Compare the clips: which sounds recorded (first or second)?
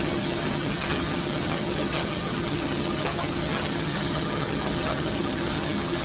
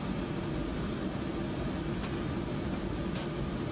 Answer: second